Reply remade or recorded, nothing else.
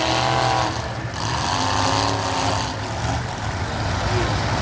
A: recorded